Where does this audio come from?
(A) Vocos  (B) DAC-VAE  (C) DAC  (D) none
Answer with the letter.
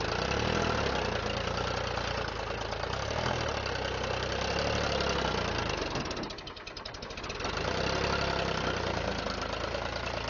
D